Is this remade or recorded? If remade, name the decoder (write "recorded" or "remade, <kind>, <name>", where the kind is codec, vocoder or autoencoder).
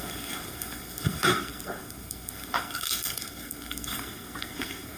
remade, codec, SNAC